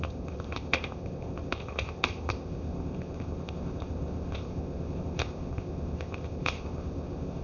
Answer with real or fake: fake